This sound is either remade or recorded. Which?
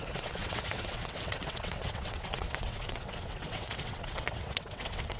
remade